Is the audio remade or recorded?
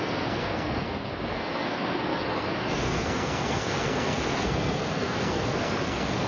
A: remade